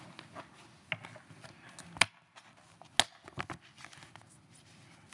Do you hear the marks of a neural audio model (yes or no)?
no